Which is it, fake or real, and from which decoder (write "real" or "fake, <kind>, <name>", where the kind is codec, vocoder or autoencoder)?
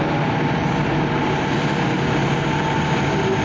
real